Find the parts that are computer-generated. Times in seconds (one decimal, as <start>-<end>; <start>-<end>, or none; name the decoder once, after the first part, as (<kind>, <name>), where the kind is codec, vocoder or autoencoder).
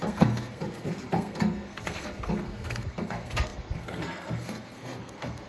0.0-5.5 (codec, SNAC)